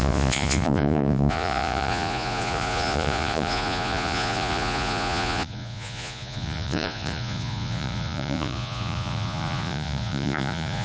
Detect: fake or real fake